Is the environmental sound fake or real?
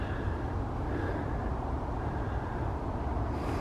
real